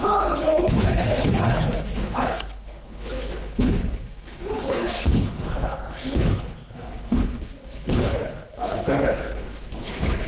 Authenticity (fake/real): fake